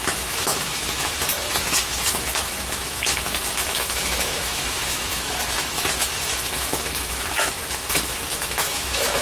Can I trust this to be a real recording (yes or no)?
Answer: no